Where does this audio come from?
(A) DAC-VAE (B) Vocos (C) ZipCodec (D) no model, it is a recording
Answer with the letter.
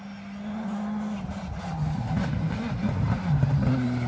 D